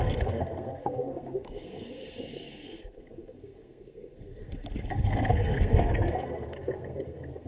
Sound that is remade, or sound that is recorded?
remade